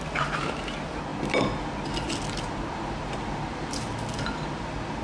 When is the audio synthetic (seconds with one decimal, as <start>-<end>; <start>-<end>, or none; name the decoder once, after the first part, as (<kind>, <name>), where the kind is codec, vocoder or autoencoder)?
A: none